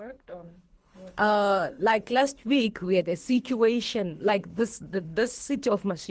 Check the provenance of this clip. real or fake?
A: fake